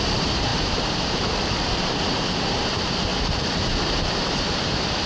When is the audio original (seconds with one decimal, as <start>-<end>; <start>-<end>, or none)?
3.1-3.6